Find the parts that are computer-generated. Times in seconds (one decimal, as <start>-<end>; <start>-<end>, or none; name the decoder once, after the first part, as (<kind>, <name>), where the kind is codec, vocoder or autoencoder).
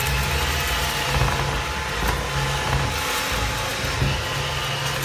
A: none